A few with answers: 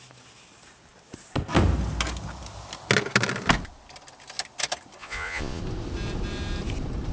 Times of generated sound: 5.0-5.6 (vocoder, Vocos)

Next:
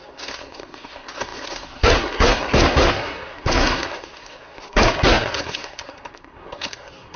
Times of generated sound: 0.0-7.2 (codec, SNAC)

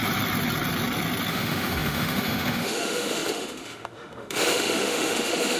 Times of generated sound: 1.3-5.6 (autoencoder, DAC-VAE)

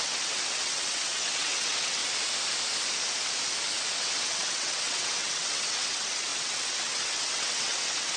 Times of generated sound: 0.0-2.0 (vocoder, WaveNeXt); 3.9-8.2

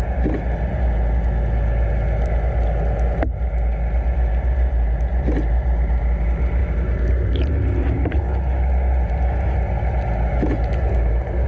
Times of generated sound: 6.6-8.2 (vocoder, BigVGAN v2)

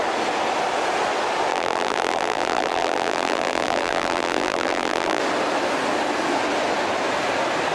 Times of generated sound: 1.5-5.2 (vocoder, BigVGAN v2)

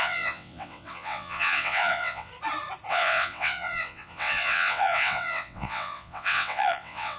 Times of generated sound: 0.0-2.3 (vocoder, WaveNeXt); 2.9-7.2

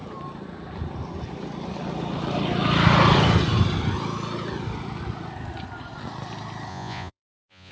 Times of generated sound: 6.7-7.7 (vocoder, Vocos)